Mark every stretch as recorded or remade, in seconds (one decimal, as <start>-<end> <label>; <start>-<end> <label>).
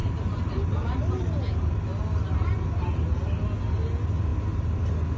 0.0-1.2 remade; 1.2-5.2 recorded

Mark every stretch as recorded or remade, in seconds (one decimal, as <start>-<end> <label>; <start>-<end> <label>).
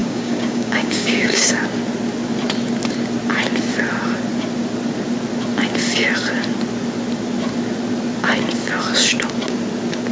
0.0-1.5 remade; 1.5-10.1 recorded